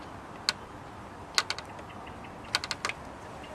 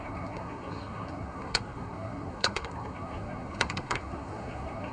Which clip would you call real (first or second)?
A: first